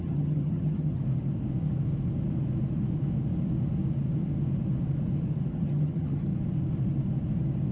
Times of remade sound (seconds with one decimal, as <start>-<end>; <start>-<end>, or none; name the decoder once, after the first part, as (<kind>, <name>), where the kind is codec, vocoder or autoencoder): 0.0-1.0 (vocoder, HiFi-GAN); 5.5-6.3